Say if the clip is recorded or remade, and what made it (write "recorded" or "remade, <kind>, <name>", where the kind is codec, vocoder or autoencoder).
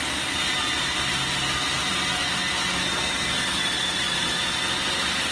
recorded